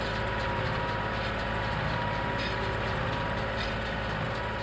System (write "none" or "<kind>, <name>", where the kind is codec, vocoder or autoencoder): none